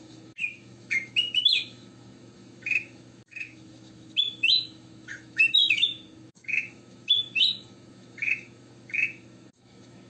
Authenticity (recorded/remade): remade